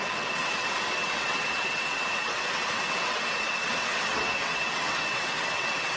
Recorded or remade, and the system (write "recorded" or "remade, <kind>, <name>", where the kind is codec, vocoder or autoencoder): remade, vocoder, WaveNeXt